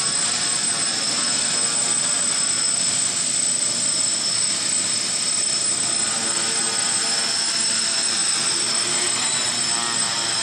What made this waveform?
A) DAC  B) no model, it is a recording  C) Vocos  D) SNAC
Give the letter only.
B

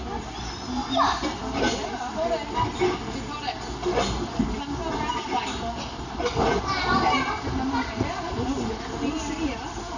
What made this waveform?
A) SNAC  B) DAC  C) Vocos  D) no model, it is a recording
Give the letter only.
D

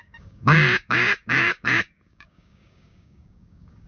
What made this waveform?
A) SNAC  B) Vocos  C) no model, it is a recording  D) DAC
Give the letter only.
D